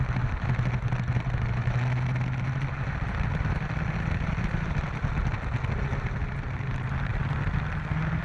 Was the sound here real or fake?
real